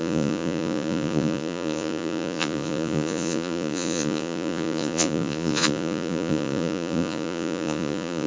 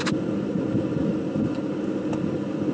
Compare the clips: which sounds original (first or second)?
second